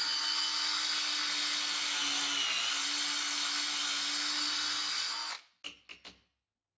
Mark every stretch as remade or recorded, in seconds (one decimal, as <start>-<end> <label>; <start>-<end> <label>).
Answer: 0.0-6.8 recorded